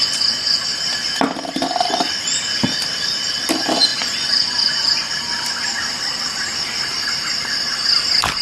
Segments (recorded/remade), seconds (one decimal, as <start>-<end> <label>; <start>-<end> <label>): 0.0-0.6 remade; 0.6-3.9 recorded; 3.9-5.1 remade; 5.1-8.4 recorded